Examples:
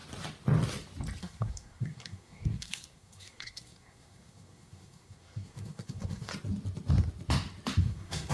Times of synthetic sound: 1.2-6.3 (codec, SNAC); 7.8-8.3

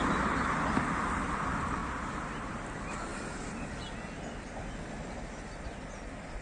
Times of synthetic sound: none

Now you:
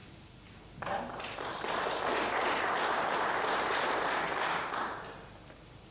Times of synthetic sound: none